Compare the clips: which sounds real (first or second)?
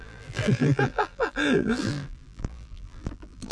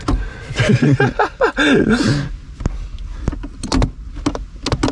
second